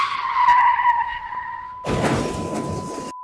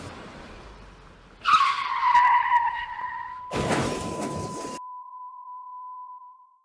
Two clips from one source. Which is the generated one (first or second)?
second